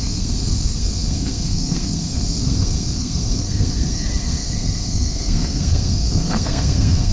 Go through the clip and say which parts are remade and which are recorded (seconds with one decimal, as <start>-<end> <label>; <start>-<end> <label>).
0.0-7.1 remade